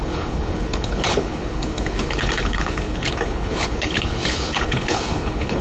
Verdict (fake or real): fake